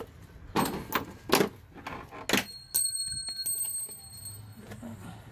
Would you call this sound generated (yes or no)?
no